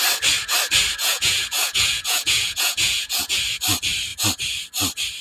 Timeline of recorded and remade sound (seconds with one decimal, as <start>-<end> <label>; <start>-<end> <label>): 0.0-1.0 recorded; 1.0-3.4 remade; 3.4-5.2 recorded